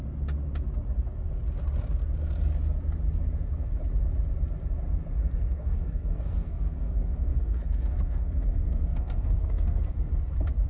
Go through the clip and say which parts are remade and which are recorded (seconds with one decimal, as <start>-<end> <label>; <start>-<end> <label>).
0.0-5.2 recorded; 5.2-9.9 remade; 9.9-10.7 recorded